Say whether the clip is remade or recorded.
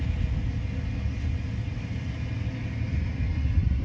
recorded